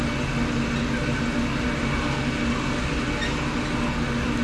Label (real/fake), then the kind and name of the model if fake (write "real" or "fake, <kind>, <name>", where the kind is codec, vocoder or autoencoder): real